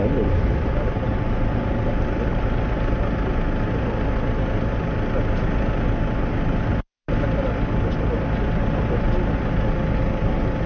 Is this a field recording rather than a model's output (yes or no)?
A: yes